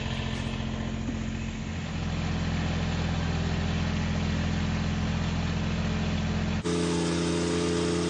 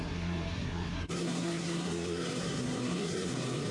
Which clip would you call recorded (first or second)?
first